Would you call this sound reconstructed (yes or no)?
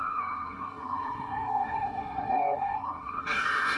yes